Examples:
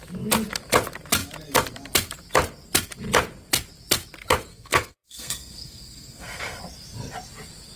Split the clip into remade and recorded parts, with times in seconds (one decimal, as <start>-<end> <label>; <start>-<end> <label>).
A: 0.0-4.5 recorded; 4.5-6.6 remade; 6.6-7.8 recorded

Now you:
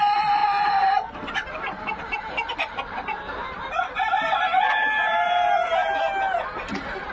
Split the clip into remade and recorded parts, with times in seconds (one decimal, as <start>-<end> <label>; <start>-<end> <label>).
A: 0.0-7.1 recorded

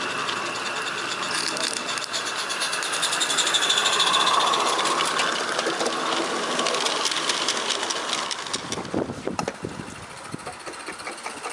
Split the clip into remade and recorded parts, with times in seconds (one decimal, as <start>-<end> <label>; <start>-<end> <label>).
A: 0.0-11.5 recorded